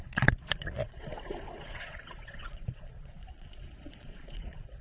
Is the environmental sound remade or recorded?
remade